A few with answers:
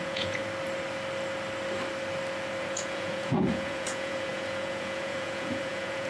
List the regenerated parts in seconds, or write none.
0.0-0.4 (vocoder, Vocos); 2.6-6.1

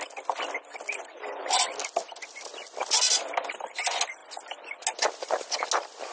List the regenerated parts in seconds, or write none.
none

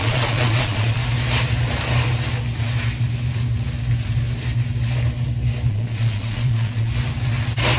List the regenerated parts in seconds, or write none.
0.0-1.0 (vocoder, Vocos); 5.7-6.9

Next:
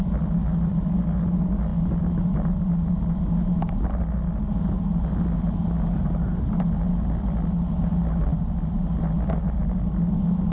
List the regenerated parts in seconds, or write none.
none

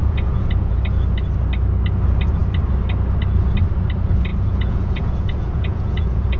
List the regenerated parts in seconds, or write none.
0.0-0.8 (vocoder, Vocos); 4.3-6.4

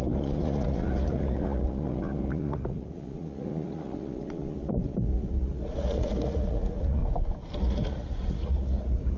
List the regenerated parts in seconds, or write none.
0.0-7.0 (vocoder, Vocos); 7.6-9.2

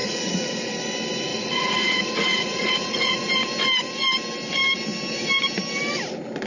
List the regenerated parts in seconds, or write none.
0.0-0.7 (vocoder, Vocos); 1.3-3.3

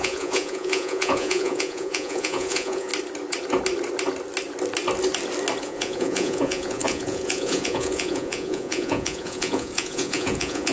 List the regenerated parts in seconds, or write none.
0.0-2.9 (vocoder, Vocos); 5.6-10.7